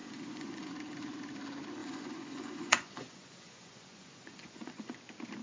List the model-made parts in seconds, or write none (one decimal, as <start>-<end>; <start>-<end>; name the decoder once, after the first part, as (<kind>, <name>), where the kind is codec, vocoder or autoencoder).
0.0-0.7 (vocoder, Vocos); 1.8-5.0